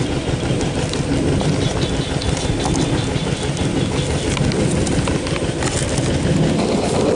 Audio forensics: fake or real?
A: real